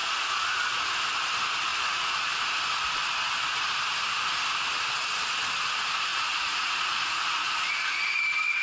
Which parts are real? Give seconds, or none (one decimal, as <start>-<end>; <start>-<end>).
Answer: 0.8-1.7; 2.3-6.1; 8.2-8.6

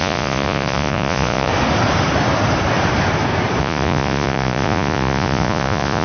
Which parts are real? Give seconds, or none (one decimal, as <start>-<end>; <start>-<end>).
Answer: 1.5-3.6

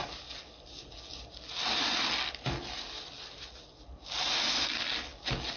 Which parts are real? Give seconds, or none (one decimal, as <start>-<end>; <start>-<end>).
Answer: 0.0-5.6

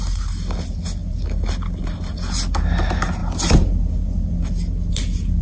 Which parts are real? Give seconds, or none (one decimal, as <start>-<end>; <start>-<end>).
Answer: 0.0-5.4

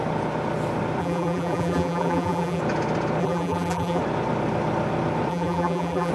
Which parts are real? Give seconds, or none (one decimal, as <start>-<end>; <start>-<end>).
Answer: 0.0-1.0; 2.6-3.2; 4.0-5.3

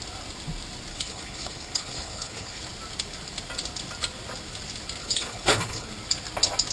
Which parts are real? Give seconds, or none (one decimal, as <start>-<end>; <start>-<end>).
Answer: 0.0-0.9; 2.6-5.0; 5.9-6.7

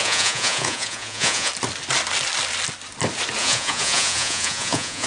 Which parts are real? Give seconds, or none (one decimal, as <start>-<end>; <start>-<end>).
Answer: 1.5-3.4

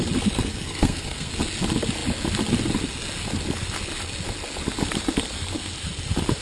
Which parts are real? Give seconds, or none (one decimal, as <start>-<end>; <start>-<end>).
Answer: 0.0-0.5; 1.3-6.4